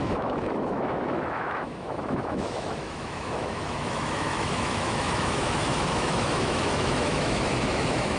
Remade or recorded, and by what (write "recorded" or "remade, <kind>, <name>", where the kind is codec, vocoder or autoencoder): remade, autoencoder, DAC-VAE